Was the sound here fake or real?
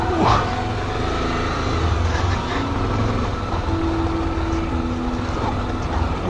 real